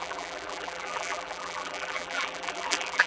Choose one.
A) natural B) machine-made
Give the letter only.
B